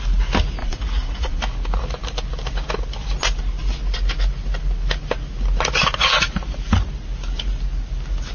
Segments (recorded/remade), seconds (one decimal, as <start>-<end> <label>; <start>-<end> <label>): 0.0-0.6 recorded; 0.6-1.4 remade; 1.4-8.3 recorded